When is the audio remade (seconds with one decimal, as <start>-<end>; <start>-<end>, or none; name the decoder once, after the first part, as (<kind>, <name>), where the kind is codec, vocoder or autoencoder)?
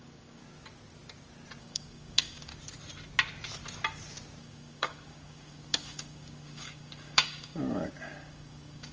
0.0-0.4 (codec, DAC); 1.6-2.5; 4.4-8.9